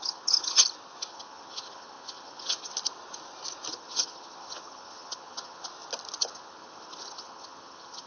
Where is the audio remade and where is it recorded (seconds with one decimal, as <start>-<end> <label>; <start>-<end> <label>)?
0.0-0.6 remade; 0.6-1.1 recorded; 1.1-2.7 remade; 2.7-3.7 recorded; 3.7-5.7 remade; 5.7-6.2 recorded; 6.2-8.1 remade